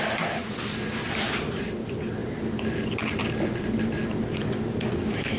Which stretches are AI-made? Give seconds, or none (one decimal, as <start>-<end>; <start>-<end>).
none